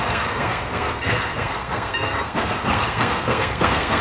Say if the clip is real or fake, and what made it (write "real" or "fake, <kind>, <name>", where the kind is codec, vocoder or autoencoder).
fake, codec, SNAC